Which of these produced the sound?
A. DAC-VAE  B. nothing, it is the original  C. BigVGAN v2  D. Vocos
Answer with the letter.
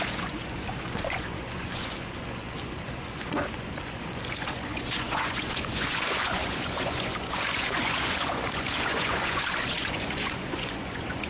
D